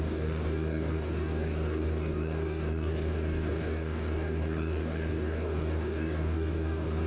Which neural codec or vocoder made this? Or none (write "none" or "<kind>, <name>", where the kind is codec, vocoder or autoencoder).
codec, DAC